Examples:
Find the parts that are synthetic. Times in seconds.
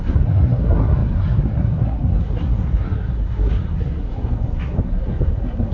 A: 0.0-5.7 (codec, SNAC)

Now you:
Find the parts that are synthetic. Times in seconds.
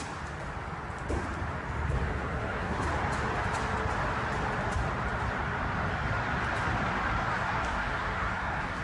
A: 2.1-2.9 (codec, SNAC); 7.2-8.8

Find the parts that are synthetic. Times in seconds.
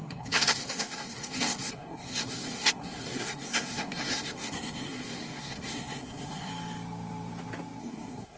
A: 0.0-6.5 (codec, SNAC); 7.8-8.4